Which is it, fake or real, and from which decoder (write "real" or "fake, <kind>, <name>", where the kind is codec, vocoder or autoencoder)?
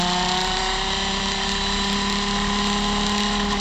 real